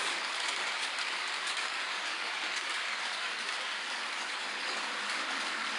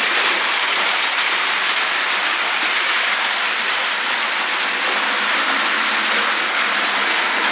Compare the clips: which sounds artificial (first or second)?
first